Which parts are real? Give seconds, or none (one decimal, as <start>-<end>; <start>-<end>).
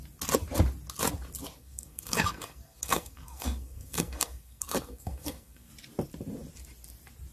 0.0-1.6; 5.7-7.3